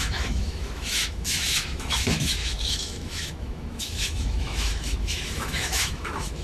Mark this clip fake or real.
fake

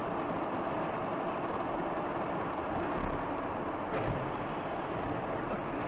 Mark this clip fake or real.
real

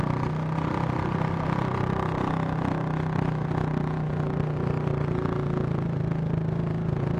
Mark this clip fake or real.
real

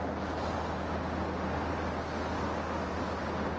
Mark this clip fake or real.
real